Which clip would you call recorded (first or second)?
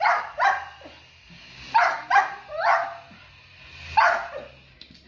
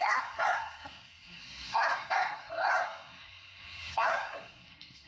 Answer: first